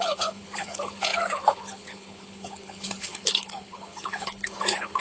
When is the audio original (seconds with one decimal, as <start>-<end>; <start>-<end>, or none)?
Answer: none

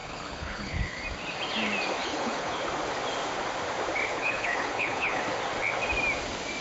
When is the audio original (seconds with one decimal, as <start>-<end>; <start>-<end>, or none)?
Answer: 1.0-2.0; 2.6-4.1; 5.2-6.6

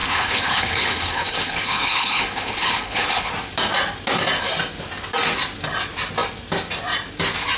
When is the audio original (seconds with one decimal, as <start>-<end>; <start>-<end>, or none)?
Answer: 3.3-7.6

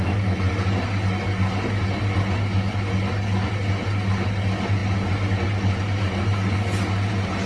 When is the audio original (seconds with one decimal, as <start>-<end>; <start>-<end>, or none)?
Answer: 0.0-7.5

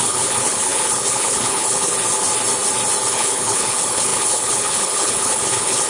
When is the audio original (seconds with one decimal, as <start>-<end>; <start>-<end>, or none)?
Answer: 1.9-3.1

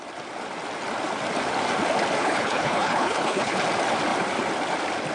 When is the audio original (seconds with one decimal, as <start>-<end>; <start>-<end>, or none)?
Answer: 0.0-2.2; 3.6-5.1

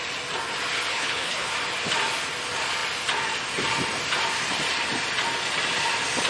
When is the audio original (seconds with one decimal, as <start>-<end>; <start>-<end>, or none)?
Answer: 0.0-0.9; 1.5-6.3

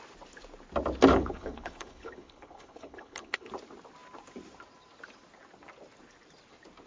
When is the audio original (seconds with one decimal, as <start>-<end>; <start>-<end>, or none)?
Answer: 0.0-1.1; 3.5-6.9